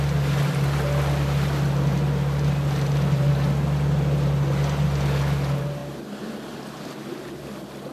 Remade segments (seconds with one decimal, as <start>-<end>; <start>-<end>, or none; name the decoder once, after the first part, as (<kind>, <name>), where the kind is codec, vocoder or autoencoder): none